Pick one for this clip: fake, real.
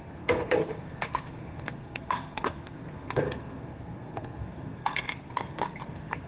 fake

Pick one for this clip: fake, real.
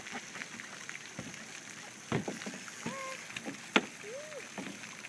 real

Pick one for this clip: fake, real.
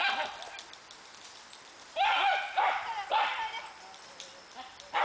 real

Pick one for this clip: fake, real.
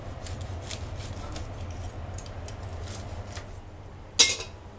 real